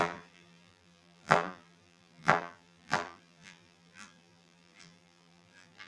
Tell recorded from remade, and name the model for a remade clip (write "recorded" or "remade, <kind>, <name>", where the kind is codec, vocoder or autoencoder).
remade, vocoder, BigVGAN v2